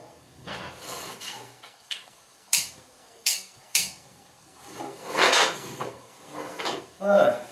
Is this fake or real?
fake